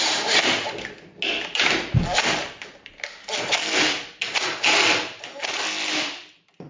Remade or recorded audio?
recorded